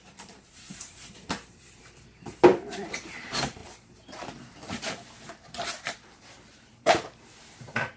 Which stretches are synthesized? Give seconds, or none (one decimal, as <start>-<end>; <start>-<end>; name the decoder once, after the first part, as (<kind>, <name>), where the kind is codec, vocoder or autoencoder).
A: 0.0-8.0 (vocoder, BigVGAN v2)